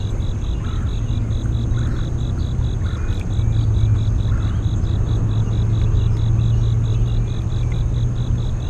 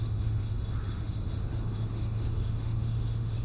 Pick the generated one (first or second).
second